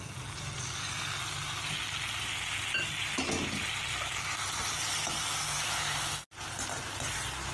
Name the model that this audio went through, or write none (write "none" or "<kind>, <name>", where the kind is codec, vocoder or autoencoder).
none